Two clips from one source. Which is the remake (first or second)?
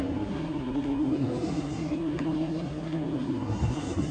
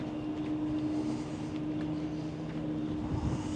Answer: first